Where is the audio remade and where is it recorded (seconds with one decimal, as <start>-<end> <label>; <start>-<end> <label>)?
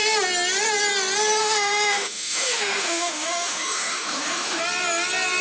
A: 0.0-1.4 recorded; 1.4-4.6 remade; 4.6-5.4 recorded